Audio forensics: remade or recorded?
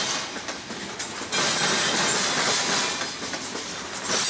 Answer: recorded